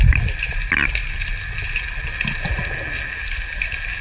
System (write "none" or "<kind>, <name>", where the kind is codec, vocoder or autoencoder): none